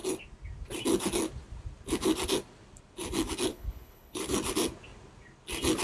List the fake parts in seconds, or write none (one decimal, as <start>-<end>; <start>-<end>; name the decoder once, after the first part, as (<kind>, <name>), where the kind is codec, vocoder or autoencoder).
3.5-4.2 (codec, HILCodec)